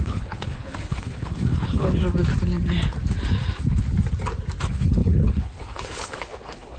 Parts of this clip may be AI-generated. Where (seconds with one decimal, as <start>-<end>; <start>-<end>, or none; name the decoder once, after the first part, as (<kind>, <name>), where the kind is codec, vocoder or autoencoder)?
0.0-2.0 (codec, HILCodec); 4.6-6.8